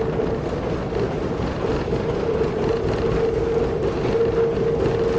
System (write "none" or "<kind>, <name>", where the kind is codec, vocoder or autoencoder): none